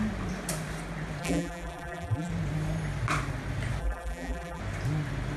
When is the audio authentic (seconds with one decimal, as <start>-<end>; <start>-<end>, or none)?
0.0-1.2; 2.3-3.8; 4.6-5.4